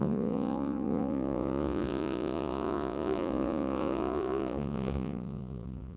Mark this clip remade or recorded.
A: remade